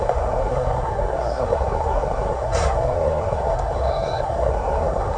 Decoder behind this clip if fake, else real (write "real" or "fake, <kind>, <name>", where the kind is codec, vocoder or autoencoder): fake, codec, SNAC